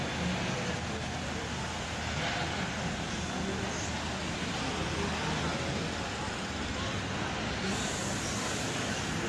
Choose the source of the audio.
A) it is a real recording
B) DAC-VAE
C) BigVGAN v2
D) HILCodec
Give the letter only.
A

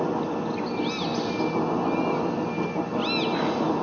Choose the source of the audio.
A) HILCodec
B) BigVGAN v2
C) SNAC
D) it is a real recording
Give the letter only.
D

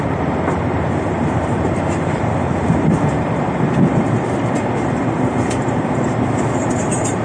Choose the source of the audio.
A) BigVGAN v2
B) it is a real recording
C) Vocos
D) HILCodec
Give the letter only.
A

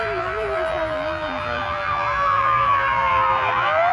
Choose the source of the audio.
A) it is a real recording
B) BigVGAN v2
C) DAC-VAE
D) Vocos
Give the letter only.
B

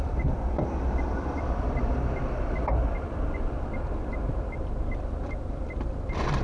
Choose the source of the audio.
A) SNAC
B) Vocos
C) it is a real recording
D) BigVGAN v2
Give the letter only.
D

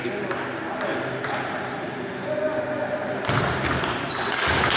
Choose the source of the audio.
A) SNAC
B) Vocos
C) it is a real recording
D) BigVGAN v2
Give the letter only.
C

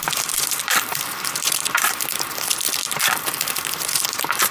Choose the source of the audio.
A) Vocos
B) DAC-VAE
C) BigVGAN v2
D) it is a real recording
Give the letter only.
C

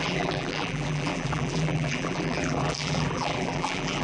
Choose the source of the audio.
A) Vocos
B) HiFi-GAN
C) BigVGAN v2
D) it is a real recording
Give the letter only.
C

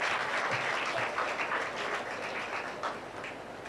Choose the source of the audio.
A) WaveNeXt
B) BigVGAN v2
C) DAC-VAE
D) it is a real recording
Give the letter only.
D